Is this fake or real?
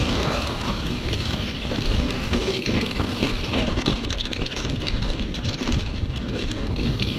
fake